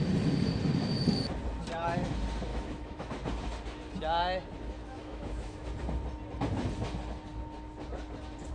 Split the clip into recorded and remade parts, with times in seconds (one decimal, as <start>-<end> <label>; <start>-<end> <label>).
0.0-2.5 recorded; 2.5-3.1 remade; 3.1-4.8 recorded; 4.8-5.7 remade; 5.7-8.5 recorded